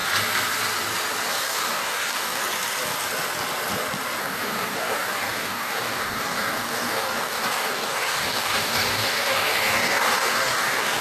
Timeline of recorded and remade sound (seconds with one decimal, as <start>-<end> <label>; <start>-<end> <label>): 0.0-1.3 recorded; 1.3-2.4 remade; 2.4-4.2 recorded; 4.2-11.0 remade